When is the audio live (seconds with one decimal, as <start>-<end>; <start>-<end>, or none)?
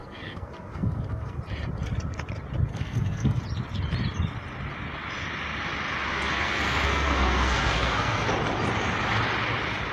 1.4-2.7; 3.4-6.1; 8.3-9.9